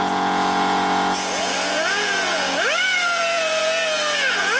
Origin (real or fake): fake